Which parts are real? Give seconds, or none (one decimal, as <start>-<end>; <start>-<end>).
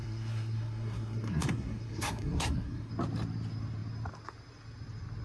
2.9-5.2